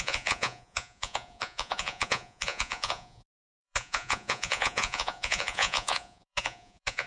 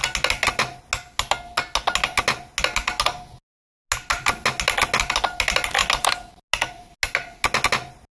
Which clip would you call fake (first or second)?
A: first